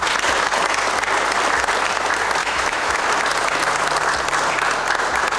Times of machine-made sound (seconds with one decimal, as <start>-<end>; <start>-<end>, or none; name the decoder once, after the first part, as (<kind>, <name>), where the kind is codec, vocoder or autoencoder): 2.4-3.0 (autoencoder, DAC-VAE)